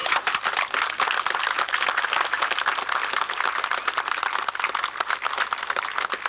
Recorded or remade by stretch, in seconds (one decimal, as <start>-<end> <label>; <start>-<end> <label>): 0.0-6.3 recorded